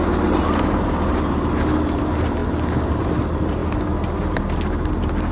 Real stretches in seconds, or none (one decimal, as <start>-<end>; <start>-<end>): 0.0-5.3